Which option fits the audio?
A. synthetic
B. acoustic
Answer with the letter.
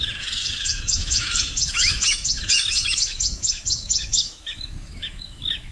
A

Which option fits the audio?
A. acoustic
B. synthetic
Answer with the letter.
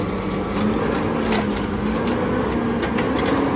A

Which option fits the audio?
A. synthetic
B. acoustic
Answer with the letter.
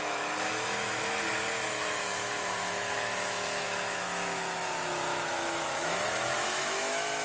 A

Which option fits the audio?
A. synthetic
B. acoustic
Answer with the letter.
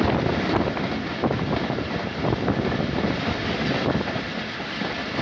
B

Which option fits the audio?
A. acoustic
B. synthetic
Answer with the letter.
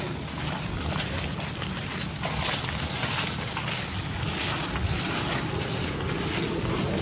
A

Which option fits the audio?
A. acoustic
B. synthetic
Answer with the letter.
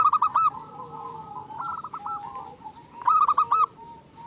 A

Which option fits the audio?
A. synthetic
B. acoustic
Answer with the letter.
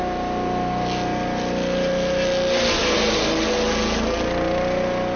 B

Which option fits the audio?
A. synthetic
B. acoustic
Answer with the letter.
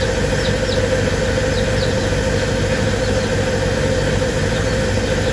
B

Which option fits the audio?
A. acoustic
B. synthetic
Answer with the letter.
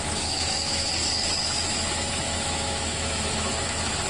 B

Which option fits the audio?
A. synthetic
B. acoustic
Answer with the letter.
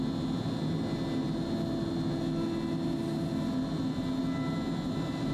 B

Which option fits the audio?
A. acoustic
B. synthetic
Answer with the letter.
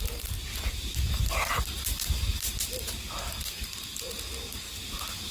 A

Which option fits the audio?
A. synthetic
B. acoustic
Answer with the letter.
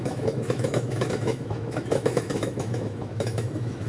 A